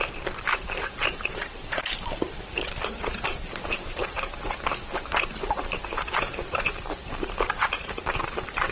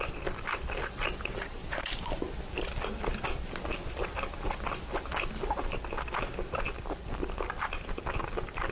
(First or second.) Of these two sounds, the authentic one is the second